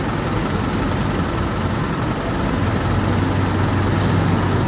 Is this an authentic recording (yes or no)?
yes